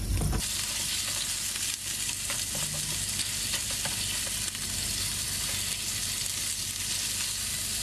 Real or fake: real